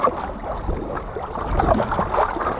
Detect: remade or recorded recorded